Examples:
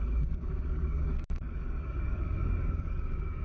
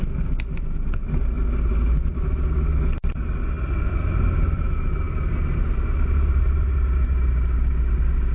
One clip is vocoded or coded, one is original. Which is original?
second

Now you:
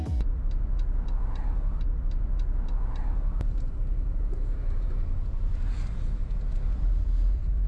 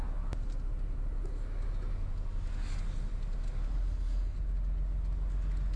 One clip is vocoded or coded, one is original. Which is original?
second